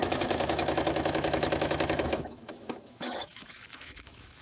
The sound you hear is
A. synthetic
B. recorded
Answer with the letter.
A